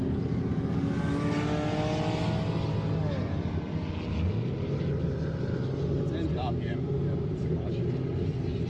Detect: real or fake real